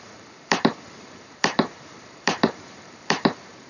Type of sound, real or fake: fake